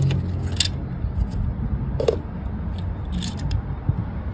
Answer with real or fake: real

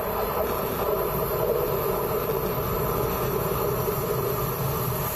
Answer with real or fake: real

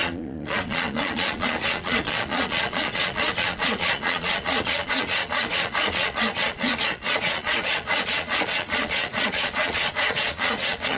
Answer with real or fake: fake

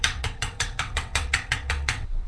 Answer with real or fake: fake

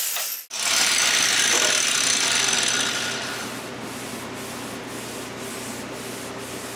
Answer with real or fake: real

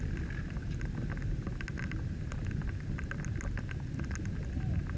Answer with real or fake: real